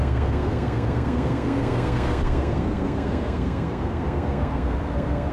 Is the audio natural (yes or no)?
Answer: no